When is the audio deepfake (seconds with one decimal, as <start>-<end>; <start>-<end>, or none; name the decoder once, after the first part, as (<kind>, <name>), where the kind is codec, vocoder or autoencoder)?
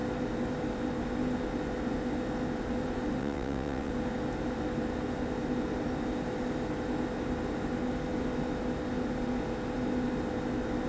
3.2-3.9 (vocoder, WaveNeXt)